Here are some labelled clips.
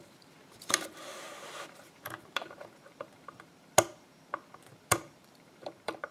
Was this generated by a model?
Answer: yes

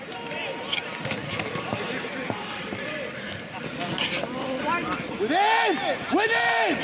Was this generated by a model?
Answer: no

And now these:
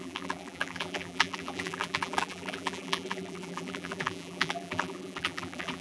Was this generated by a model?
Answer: yes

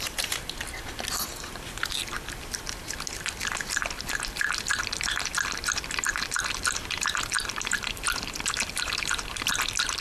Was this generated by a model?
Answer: yes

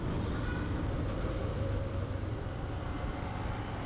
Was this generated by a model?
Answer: no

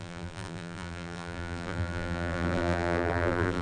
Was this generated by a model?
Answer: yes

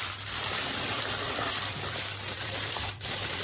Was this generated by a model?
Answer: yes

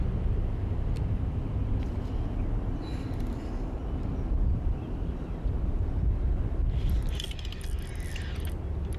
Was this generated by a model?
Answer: no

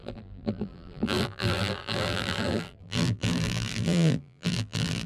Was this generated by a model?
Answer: yes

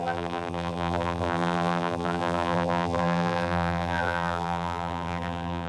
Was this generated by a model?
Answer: yes